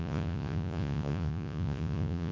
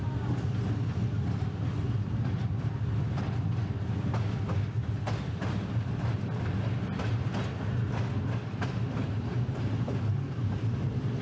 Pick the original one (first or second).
second